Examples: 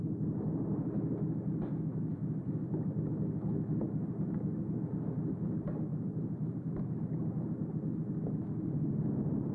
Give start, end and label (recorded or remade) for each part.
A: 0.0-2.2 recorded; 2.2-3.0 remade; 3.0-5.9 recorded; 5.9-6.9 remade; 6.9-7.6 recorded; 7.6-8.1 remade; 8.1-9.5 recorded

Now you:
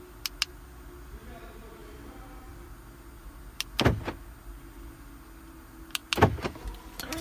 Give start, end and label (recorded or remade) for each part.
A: 0.0-1.8 recorded; 1.8-2.7 remade; 2.7-7.2 recorded

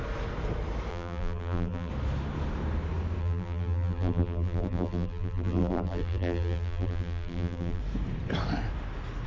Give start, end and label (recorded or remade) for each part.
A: 0.0-0.9 recorded; 0.9-1.9 remade; 1.9-3.2 recorded; 3.2-7.8 remade; 7.8-9.3 recorded

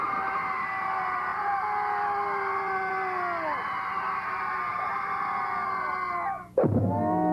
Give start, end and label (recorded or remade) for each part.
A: 0.0-7.3 recorded

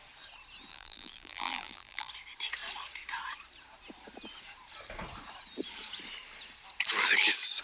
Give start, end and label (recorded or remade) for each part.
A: 0.0-0.7 recorded; 0.7-2.1 remade; 2.1-7.6 recorded